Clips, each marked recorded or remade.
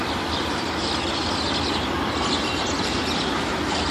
recorded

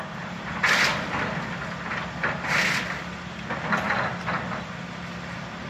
recorded